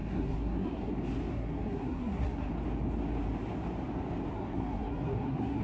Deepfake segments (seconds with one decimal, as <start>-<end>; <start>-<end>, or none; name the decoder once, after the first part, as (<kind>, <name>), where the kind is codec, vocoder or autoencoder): 0.0-0.9 (codec, SNAC); 1.3-2.5; 4.3-5.6